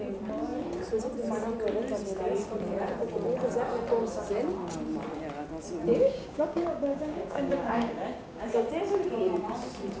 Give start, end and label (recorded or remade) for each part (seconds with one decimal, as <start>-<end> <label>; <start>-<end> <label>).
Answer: 0.0-5.9 recorded; 5.9-8.7 remade; 8.7-10.0 recorded